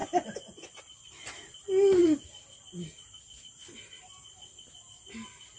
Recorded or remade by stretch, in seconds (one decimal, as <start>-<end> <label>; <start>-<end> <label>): 0.0-0.8 remade; 0.8-5.6 recorded

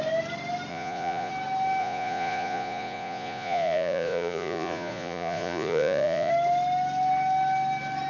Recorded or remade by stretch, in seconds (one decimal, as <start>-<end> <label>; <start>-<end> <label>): 0.0-0.7 recorded; 0.7-1.3 remade; 1.3-1.8 recorded; 1.8-6.3 remade; 6.3-8.1 recorded

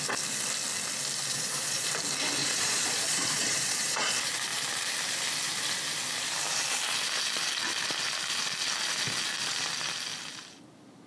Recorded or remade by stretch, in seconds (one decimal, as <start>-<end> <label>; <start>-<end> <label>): 0.0-1.3 recorded; 1.3-1.9 remade; 1.9-2.4 recorded; 2.4-4.1 remade; 4.1-11.1 recorded

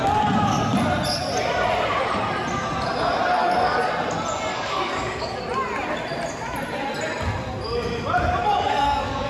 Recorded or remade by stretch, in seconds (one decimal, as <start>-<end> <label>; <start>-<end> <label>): 0.0-3.4 recorded; 3.4-3.9 remade; 3.9-4.5 recorded; 4.5-5.4 remade; 5.4-8.4 recorded; 8.4-9.3 remade

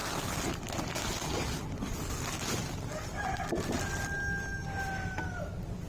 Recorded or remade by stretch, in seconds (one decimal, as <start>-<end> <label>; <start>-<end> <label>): 0.0-5.9 recorded